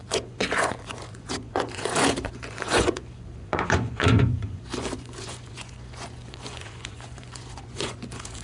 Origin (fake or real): fake